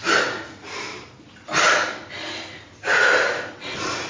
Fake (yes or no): no